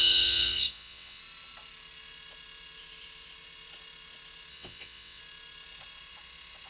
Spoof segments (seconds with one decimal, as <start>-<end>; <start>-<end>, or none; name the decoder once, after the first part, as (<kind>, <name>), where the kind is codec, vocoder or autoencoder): 0.0-1.2 (vocoder, WaveNeXt); 4.5-5.2